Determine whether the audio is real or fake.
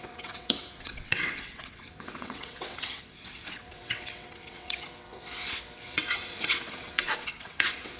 fake